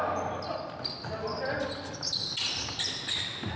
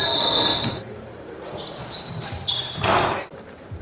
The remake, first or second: second